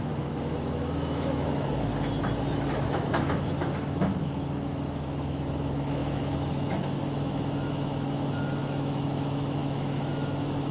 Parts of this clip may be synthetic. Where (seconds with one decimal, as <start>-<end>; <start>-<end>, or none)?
0.0-1.9; 2.7-10.7